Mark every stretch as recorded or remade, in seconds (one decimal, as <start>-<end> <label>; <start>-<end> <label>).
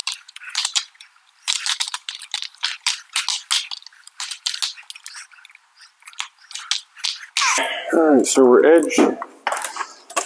0.0-3.2 remade; 3.2-3.9 recorded; 3.9-4.6 remade; 4.6-10.3 recorded